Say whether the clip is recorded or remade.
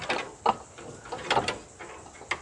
recorded